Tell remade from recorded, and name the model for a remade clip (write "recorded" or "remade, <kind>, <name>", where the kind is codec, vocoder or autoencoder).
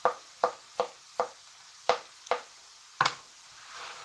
recorded